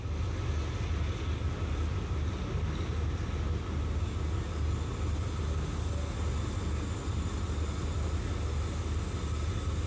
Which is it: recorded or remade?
recorded